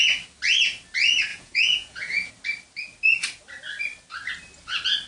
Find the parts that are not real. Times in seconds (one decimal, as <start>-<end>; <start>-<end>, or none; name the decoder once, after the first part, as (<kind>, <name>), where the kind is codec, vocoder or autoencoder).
1.3-2.3 (vocoder, Vocos)